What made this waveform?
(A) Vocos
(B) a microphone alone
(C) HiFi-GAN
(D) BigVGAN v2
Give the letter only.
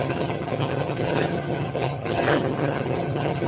C